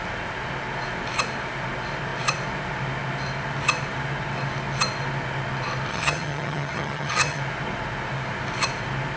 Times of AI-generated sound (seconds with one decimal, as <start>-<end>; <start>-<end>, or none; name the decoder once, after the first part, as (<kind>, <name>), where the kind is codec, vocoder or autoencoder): 5.9-7.4 (vocoder, HiFi-GAN)